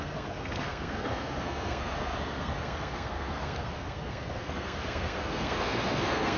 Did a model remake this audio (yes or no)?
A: yes